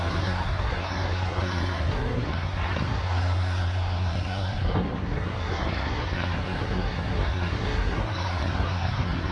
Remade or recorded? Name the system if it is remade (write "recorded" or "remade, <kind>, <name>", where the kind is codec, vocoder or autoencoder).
remade, codec, SNAC